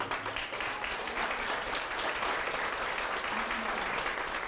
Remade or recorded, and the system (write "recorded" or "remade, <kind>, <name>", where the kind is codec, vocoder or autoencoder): recorded